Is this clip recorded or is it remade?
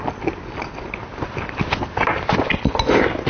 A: recorded